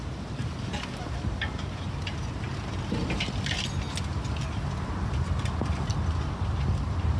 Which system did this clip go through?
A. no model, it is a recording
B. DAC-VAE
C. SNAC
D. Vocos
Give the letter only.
A